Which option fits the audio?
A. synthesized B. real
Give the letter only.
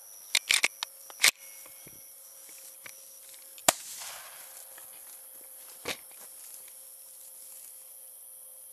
B